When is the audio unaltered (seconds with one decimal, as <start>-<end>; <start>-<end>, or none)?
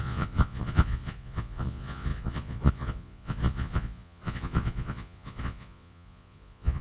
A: none